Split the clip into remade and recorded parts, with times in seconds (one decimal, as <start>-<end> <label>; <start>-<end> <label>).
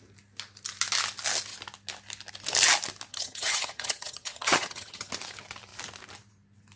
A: 0.0-3.1 recorded; 3.1-5.1 remade; 5.1-6.8 recorded